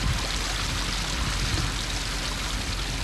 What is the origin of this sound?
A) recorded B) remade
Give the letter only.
A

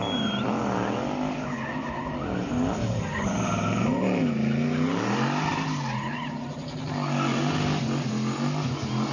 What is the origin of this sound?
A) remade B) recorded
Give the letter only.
B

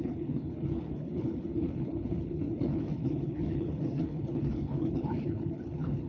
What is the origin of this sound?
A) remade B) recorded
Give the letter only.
A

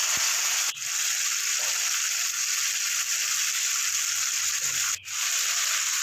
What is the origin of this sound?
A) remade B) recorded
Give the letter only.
B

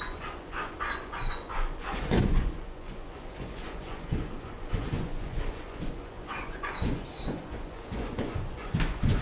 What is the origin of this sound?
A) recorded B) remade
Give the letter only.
B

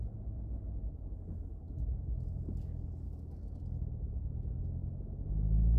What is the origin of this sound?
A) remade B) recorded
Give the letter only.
B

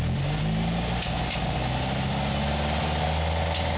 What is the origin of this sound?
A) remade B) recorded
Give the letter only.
B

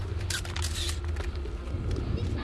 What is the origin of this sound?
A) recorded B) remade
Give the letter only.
A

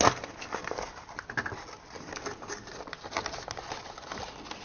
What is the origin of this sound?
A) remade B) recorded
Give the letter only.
B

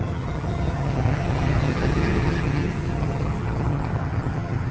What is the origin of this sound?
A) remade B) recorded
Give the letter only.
A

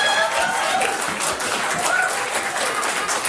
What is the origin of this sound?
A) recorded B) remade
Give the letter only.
A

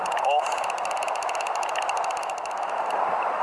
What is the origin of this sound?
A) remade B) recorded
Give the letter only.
B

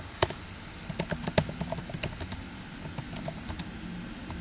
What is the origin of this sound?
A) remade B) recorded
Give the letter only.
B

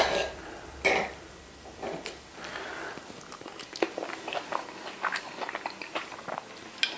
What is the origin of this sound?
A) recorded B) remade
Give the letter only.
A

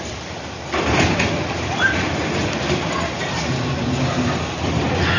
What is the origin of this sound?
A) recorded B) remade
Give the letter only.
A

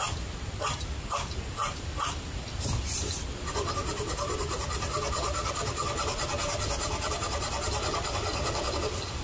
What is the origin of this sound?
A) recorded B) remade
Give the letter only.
A